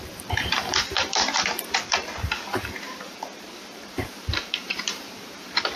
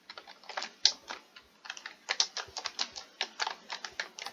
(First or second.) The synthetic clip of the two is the first